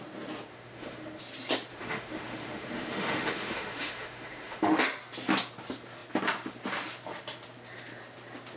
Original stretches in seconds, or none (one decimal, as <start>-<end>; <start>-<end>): 0.0-0.5; 1.2-1.7; 4.8-8.6